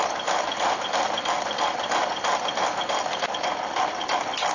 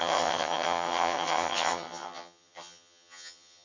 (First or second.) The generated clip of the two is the second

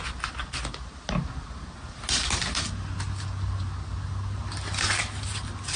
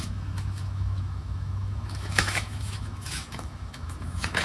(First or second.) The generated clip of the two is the second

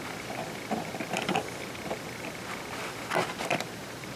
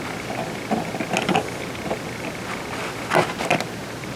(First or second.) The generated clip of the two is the first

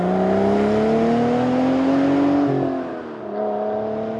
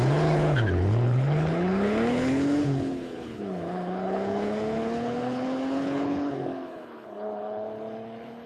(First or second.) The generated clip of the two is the second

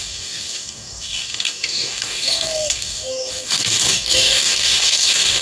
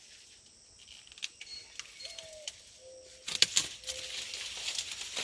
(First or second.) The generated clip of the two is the first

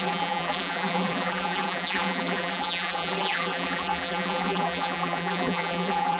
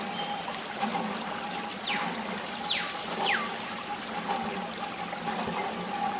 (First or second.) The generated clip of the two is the first